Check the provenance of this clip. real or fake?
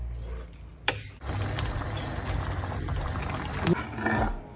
real